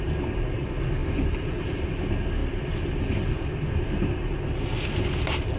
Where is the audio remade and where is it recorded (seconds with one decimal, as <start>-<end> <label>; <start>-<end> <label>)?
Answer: 0.0-1.0 recorded; 1.0-1.8 remade; 1.8-2.4 recorded; 2.4-3.7 remade; 3.7-5.6 recorded